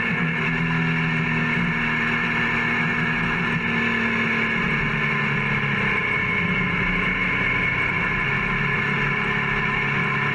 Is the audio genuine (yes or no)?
yes